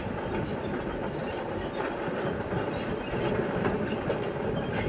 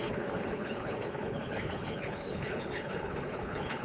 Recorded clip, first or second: first